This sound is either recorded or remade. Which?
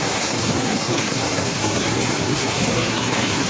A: remade